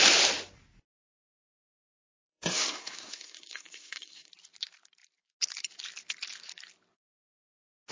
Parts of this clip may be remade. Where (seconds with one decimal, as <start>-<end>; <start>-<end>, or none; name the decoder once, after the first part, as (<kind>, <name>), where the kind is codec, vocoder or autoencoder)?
1.7-4.3 (codec, SNAC)